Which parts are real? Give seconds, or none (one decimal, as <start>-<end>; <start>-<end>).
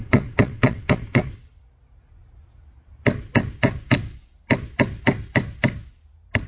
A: 1.6-6.5